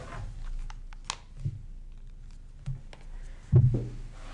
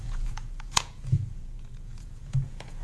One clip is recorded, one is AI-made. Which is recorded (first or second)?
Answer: first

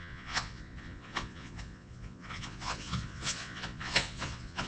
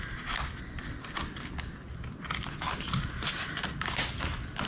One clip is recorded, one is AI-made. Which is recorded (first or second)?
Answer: second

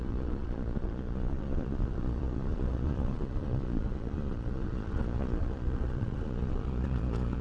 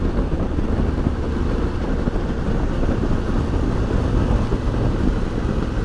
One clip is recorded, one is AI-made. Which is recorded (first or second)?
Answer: second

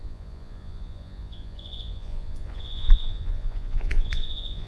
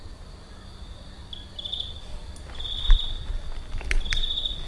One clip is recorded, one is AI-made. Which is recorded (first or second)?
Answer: second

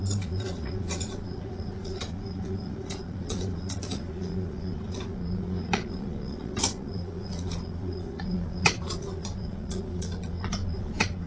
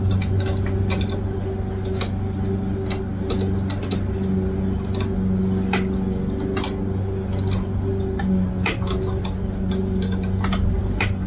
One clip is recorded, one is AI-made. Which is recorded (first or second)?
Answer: second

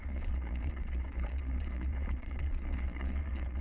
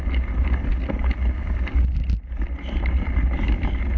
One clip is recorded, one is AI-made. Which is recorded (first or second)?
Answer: second